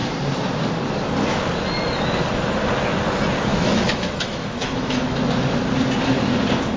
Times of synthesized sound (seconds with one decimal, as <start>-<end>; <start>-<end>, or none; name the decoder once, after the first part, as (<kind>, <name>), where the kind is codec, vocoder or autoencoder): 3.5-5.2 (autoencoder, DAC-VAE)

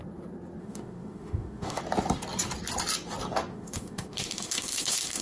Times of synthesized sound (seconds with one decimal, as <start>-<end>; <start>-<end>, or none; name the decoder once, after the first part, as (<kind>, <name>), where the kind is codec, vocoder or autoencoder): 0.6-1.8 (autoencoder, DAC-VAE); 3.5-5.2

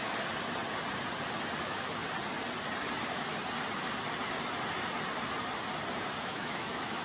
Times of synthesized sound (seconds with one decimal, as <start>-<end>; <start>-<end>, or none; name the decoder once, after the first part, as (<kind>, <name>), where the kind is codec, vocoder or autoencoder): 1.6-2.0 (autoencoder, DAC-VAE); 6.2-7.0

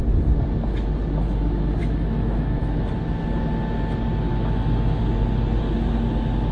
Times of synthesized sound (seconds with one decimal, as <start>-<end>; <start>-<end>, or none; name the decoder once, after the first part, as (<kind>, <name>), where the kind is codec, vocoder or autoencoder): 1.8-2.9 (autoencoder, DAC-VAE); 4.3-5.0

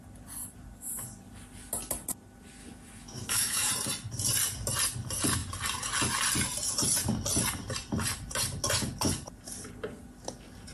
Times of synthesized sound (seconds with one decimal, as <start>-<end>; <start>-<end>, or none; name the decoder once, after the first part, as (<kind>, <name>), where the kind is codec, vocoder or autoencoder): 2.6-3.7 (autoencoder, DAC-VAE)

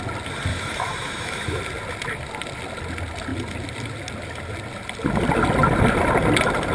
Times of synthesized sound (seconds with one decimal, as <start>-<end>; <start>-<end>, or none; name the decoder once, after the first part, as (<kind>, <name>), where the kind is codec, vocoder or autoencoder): 0.5-1.6 (autoencoder, DAC-VAE)

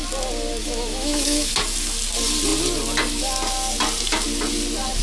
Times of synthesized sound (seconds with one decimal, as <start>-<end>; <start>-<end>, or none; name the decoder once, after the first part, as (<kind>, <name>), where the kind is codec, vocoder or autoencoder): 0.6-1.5 (autoencoder, DAC-VAE)

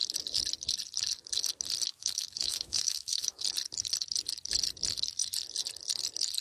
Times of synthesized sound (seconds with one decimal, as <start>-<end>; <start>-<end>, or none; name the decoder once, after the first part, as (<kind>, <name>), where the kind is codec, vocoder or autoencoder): 1.9-3.4 (autoencoder, DAC-VAE)